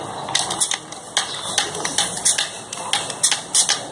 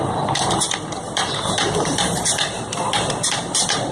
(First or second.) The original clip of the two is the first